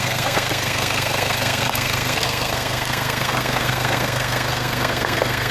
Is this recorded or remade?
remade